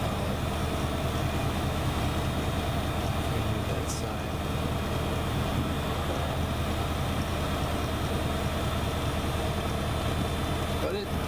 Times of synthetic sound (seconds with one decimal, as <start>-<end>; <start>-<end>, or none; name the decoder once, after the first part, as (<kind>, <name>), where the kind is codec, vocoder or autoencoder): 1.4-2.0 (autoencoder, DAC-VAE)